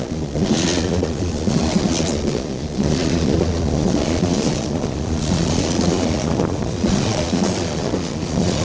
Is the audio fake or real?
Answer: fake